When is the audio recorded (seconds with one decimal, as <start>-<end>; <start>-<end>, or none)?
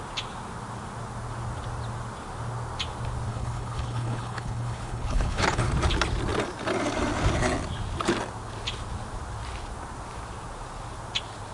0.0-3.3; 5.7-11.5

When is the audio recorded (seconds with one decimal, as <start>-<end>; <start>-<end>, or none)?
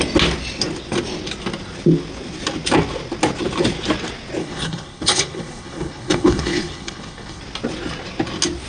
0.0-4.4; 7.4-8.7